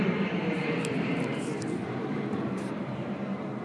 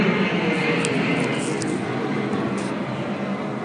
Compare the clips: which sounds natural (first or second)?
second